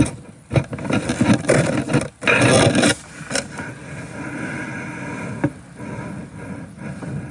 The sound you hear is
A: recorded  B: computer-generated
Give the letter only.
A